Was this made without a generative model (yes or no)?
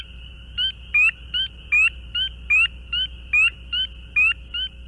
yes